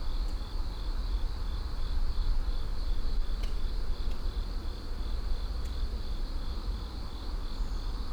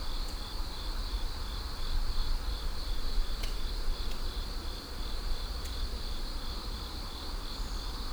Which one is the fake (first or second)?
second